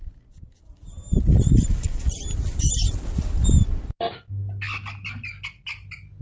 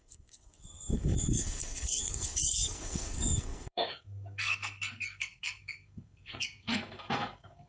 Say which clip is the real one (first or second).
first